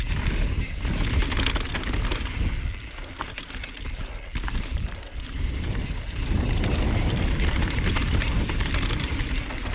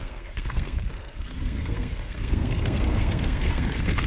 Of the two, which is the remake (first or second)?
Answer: second